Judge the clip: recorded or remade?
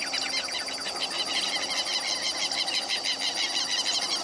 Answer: recorded